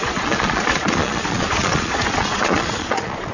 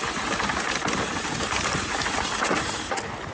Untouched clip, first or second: second